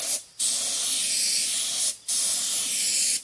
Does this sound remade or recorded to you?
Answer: recorded